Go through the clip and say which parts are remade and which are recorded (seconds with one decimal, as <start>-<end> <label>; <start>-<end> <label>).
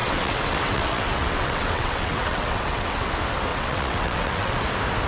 0.0-3.1 remade; 3.1-3.5 recorded; 3.5-4.6 remade; 4.6-5.1 recorded